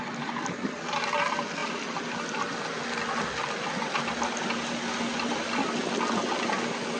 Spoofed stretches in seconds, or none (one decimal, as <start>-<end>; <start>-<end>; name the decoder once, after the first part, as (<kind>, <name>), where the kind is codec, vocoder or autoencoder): none